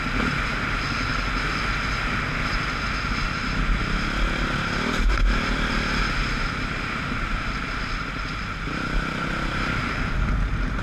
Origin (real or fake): real